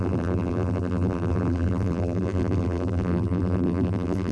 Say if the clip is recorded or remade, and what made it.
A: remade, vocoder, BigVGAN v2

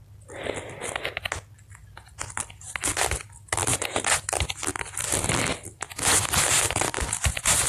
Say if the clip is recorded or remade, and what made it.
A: recorded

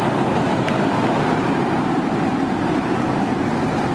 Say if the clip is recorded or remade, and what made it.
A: remade, vocoder, BigVGAN v2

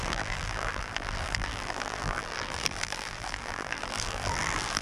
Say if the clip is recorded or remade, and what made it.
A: remade, vocoder, BigVGAN v2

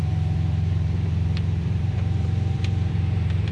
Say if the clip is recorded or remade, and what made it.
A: remade, vocoder, BigVGAN v2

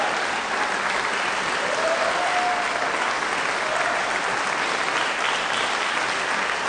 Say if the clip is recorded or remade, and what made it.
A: recorded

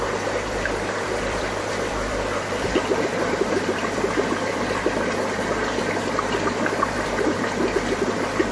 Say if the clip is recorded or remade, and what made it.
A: remade, vocoder, BigVGAN v2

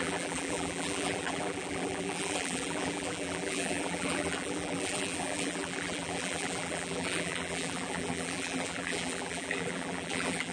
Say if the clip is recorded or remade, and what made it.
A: remade, vocoder, BigVGAN v2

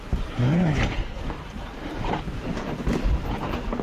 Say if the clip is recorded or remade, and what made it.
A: remade, vocoder, BigVGAN v2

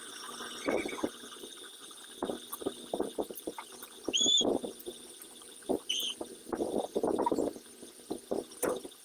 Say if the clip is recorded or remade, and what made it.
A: recorded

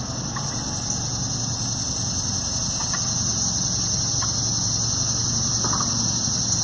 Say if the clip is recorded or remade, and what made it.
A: recorded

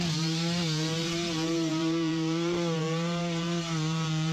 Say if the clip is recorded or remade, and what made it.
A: remade, vocoder, BigVGAN v2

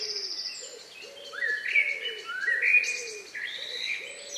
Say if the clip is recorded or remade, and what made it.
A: recorded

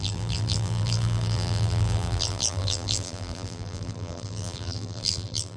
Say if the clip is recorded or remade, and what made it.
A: remade, vocoder, BigVGAN v2